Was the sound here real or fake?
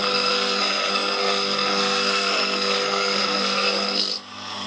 fake